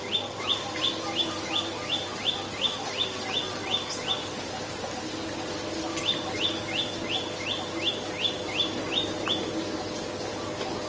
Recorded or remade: recorded